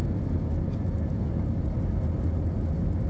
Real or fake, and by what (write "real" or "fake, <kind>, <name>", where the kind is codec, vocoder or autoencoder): real